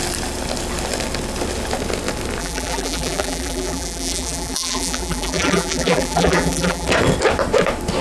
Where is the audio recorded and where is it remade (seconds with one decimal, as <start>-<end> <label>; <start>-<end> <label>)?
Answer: 0.0-2.4 recorded; 2.4-6.9 remade; 6.9-8.0 recorded